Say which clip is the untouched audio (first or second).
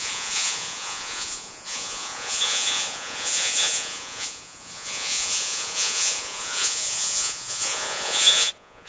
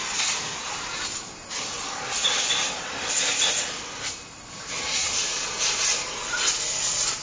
second